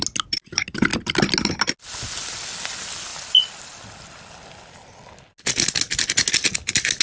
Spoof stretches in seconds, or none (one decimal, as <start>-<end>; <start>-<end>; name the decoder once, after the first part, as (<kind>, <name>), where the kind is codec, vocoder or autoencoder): none